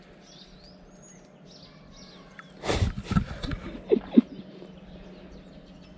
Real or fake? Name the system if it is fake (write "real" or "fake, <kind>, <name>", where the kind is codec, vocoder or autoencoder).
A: real